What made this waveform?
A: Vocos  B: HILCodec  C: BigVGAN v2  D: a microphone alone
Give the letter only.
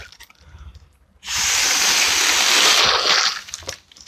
D